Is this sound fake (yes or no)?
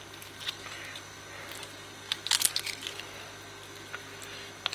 no